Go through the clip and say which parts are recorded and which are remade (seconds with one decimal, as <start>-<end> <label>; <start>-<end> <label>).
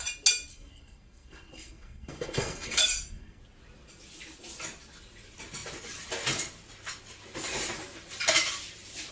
0.0-0.5 recorded; 0.5-3.4 remade; 3.4-9.1 recorded